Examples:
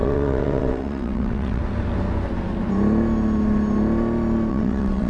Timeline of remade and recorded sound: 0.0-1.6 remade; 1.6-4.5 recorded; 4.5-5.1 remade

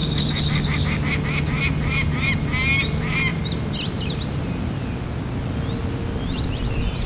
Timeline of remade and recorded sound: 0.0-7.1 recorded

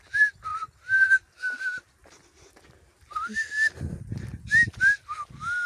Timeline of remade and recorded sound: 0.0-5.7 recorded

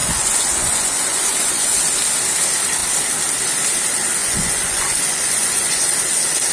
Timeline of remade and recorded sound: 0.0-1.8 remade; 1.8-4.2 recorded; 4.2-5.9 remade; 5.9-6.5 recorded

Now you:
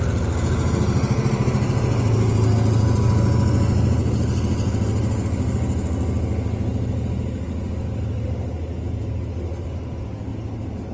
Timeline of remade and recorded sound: 0.0-10.9 recorded

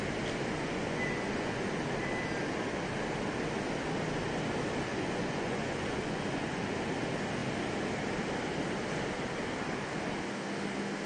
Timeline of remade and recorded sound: 0.0-0.6 recorded; 0.6-1.7 remade; 1.7-4.9 recorded; 4.9-6.8 remade; 6.8-11.1 recorded

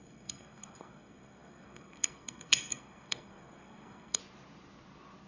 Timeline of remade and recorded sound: 0.0-4.2 remade; 4.2-5.3 recorded

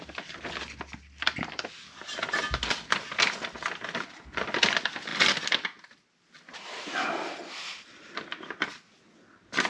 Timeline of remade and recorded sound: 0.0-9.7 recorded